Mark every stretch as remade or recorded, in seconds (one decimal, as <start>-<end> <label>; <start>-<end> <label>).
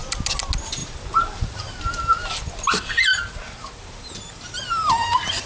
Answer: 0.0-0.8 recorded; 0.8-1.8 remade; 1.8-3.1 recorded; 3.1-4.6 remade; 4.6-5.5 recorded